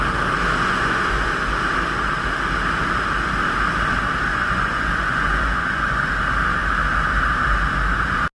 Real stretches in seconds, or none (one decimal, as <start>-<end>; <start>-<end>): 0.0-0.6; 1.3-4.3; 6.1-8.4